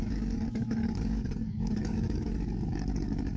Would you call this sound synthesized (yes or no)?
yes